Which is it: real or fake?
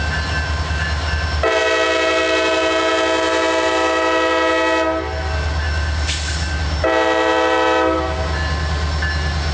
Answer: real